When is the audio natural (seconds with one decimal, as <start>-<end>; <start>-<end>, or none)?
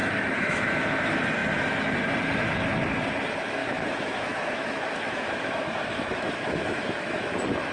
0.6-3.6; 7.3-7.7